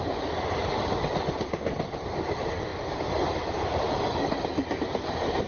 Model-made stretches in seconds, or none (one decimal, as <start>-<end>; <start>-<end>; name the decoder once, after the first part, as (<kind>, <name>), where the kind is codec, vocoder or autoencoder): none